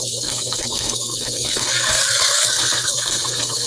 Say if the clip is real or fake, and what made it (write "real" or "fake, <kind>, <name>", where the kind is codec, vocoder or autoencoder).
fake, codec, SNAC